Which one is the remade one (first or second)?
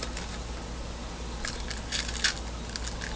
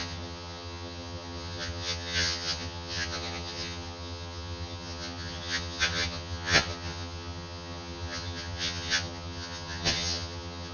second